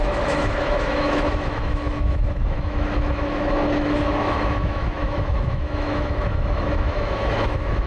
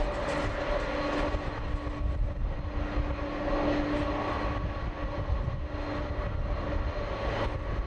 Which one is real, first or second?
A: second